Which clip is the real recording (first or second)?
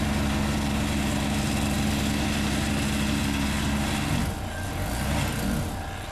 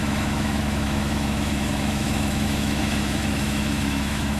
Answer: first